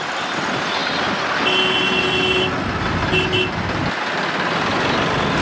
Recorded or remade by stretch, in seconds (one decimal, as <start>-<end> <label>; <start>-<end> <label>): 0.0-5.4 recorded